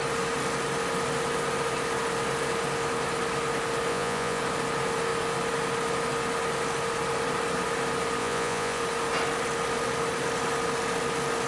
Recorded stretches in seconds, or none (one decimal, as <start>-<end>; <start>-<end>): 0.0-3.9; 4.4-8.2; 8.8-11.5

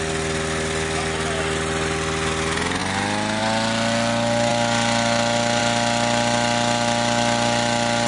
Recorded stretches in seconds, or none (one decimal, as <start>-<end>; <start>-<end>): 0.0-8.1

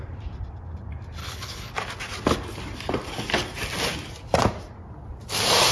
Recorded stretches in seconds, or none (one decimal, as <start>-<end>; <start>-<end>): 0.0-1.2; 1.7-5.7